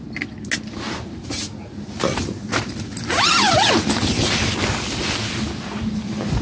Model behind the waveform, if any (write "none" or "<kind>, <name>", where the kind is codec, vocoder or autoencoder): none